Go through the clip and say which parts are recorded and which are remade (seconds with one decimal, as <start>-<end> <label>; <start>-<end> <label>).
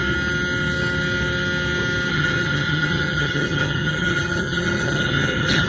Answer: 0.0-2.1 recorded; 2.1-5.7 remade